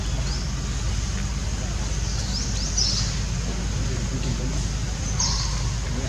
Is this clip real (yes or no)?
yes